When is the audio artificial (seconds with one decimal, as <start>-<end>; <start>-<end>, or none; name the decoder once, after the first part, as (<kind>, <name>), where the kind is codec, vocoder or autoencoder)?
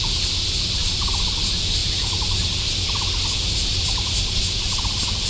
none